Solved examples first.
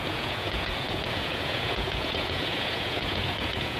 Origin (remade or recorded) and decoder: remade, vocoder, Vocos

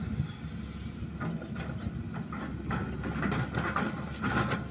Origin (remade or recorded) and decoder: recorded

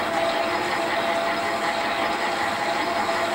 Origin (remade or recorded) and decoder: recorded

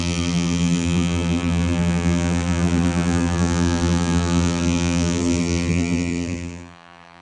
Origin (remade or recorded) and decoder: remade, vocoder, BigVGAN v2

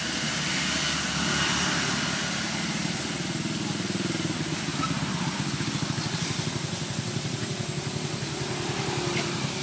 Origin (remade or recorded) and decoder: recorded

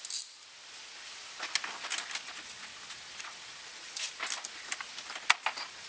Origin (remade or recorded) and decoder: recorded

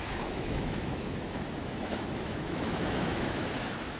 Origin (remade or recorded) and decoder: remade, autoencoder, DAC-VAE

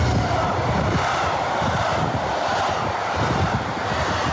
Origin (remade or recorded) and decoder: recorded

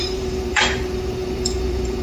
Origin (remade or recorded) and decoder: remade, vocoder, BigVGAN v2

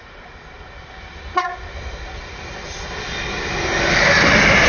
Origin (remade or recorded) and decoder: recorded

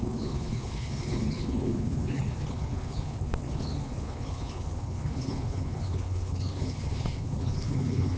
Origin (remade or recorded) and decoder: remade, codec, HILCodec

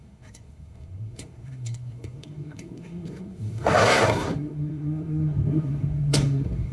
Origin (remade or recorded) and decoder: remade, codec, SNAC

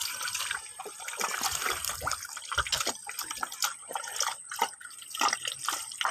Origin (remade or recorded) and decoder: recorded